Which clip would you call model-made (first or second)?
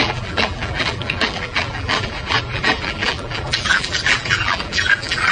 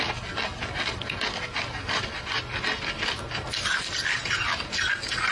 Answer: first